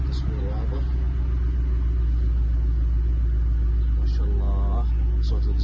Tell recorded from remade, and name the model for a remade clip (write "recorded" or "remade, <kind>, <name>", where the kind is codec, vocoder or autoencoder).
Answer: recorded